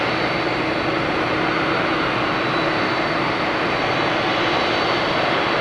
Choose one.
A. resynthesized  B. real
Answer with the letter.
B